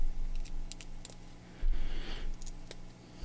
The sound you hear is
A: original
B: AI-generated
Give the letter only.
A